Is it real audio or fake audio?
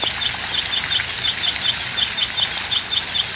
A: real